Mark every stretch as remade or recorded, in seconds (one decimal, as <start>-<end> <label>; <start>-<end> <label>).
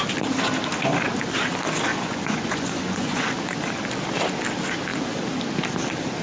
0.0-1.9 recorded; 1.9-3.3 remade; 3.3-6.2 recorded